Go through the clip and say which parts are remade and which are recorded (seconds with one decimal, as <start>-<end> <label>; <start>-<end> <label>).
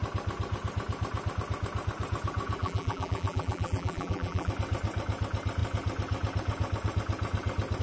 0.0-2.6 recorded; 2.6-4.5 remade; 4.5-7.8 recorded